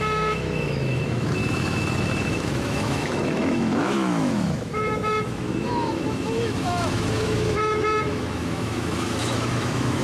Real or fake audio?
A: fake